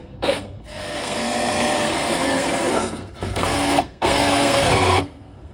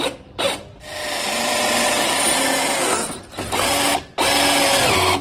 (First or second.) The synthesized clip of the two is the first